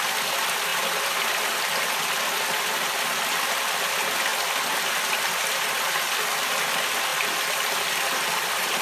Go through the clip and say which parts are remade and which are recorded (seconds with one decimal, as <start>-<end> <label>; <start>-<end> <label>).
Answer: 0.0-8.8 recorded